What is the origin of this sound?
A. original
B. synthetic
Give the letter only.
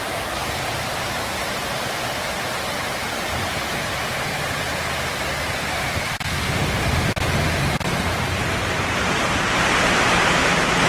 A